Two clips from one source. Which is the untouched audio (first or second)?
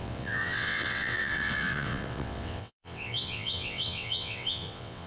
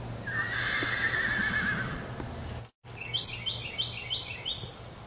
second